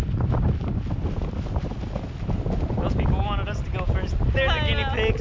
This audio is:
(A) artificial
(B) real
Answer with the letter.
B